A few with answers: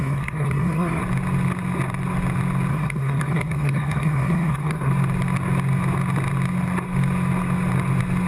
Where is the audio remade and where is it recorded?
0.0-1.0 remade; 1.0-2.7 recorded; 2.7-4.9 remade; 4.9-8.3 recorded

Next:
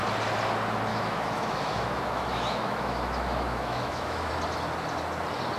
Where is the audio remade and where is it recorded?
0.0-0.9 recorded; 0.9-4.3 remade; 4.3-5.6 recorded

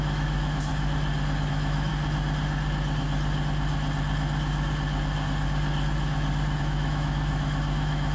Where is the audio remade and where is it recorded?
0.0-0.7 remade; 0.7-1.5 recorded; 1.5-1.9 remade; 1.9-6.6 recorded; 6.6-8.1 remade